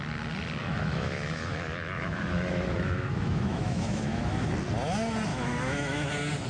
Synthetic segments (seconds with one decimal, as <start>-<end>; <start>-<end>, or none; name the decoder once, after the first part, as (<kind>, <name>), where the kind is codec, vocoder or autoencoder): 0.6-4.5 (autoencoder, DAC-VAE); 5.3-6.1

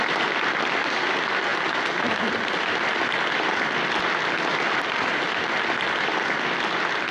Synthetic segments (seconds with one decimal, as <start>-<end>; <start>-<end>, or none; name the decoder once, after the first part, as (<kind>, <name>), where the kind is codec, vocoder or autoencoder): none

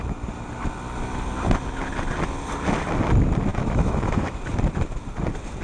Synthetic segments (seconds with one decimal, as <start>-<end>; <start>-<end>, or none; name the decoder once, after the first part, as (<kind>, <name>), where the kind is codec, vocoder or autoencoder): 3.5-4.4 (autoencoder, DAC-VAE)

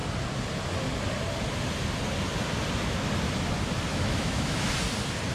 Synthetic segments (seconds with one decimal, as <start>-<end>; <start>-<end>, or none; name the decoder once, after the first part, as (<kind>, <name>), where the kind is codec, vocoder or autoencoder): 3.9-4.7 (autoencoder, DAC-VAE)